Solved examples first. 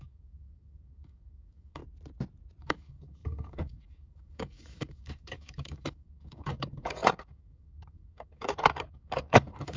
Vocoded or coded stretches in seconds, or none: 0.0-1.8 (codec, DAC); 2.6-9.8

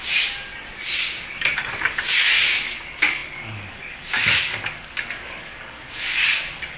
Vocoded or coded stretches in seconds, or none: 0.0-0.5 (codec, DAC); 1.2-6.8